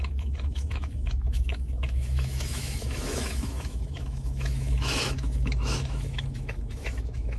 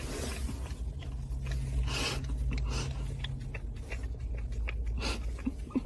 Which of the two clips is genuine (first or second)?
second